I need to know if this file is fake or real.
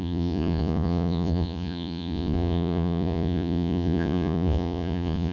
fake